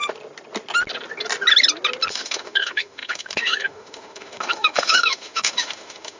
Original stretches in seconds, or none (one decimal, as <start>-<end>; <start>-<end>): 0.0-2.1